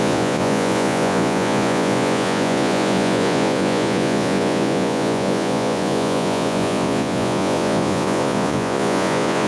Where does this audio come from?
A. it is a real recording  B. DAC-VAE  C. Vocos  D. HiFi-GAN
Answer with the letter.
C